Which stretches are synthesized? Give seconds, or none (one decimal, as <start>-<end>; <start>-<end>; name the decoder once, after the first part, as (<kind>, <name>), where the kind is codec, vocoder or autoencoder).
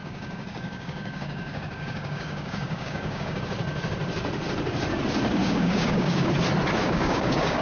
0.0-3.4 (codec, DAC); 5.4-6.3; 6.8-7.6